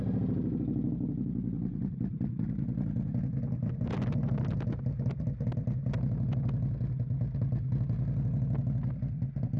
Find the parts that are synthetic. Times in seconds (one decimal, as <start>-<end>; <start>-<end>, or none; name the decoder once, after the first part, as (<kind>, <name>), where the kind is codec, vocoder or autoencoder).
none